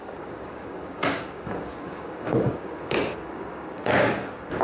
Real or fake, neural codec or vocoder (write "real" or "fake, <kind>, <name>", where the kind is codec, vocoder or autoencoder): fake, codec, DAC